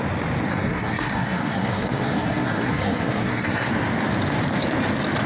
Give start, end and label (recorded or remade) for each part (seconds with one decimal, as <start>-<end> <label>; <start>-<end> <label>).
0.0-0.5 recorded; 0.5-3.7 remade; 3.7-5.3 recorded